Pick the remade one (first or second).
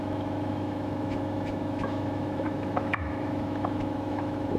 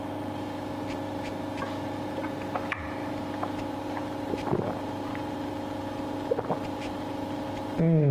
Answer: first